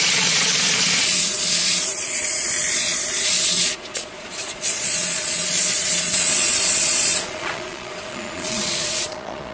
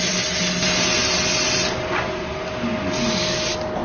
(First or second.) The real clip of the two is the second